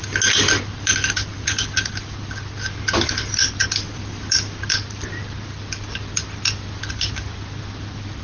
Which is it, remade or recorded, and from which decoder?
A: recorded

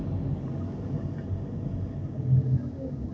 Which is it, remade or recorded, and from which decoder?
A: recorded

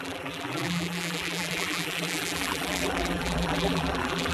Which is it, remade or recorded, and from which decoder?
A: remade, vocoder, BigVGAN v2